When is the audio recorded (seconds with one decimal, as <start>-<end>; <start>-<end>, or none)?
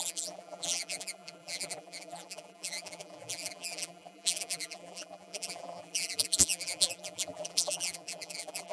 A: none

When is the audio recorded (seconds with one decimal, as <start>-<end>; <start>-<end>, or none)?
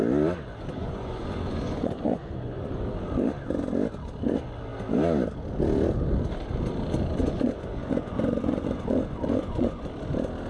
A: 0.0-0.8; 2.8-7.2; 9.9-10.5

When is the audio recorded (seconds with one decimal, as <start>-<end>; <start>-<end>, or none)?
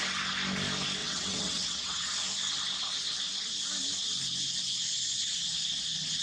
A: 0.0-1.0; 2.1-6.2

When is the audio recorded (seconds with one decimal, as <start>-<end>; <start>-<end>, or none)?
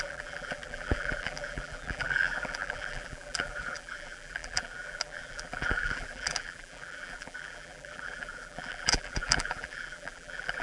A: none